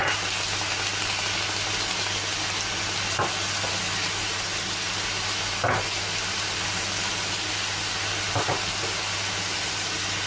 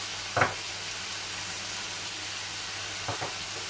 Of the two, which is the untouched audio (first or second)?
first